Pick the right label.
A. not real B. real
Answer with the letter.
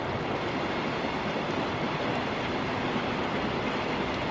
B